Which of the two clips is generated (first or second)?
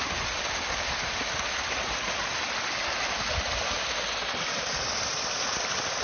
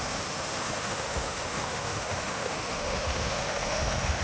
second